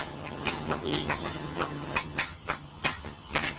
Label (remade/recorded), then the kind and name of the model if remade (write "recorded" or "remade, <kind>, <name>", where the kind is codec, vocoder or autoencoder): remade, vocoder, HiFi-GAN